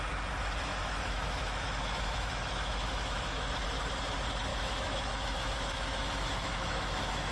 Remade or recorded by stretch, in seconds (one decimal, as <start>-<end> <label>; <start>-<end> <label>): 0.0-0.7 recorded; 0.7-3.5 remade; 3.5-4.5 recorded; 4.5-7.3 remade